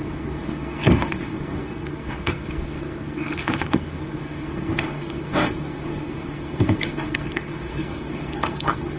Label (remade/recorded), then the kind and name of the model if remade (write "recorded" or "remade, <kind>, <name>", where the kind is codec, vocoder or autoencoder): remade, codec, SNAC